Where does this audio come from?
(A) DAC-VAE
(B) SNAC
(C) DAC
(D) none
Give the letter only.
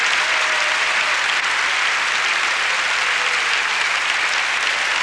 D